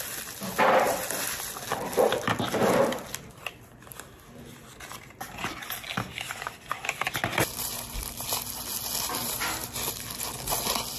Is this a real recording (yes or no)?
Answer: yes